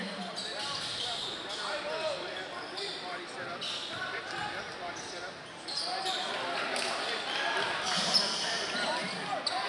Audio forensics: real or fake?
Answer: real